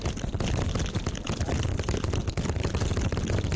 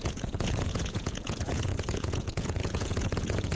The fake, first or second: second